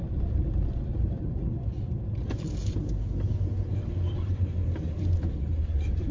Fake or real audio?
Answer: real